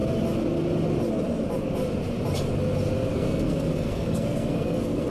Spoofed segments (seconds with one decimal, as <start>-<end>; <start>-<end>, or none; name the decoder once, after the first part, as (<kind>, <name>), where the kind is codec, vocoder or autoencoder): 3.1-5.1 (codec, SNAC)